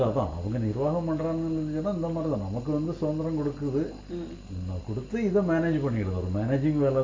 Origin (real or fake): real